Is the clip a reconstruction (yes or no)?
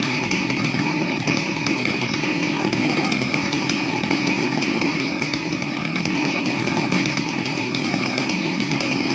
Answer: yes